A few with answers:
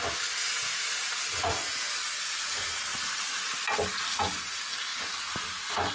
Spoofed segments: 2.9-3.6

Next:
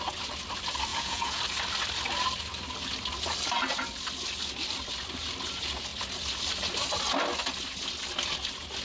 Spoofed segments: 0.9-1.4

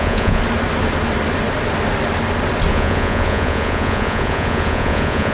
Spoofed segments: 0.0-0.4; 2.7-5.3

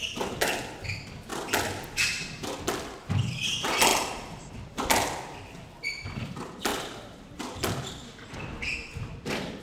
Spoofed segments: 1.3-2.6; 3.9-4.8; 6.7-7.7

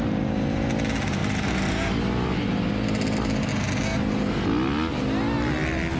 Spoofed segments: none

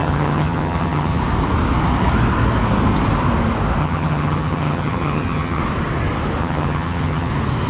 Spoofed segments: 0.0-1.2; 3.8-5.6; 6.4-7.3

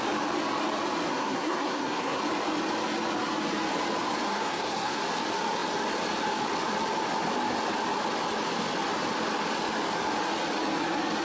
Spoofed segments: 1.1-2.2; 4.3-5.0

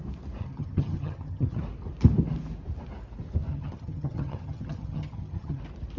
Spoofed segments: 0.4-1.6; 3.5-5.6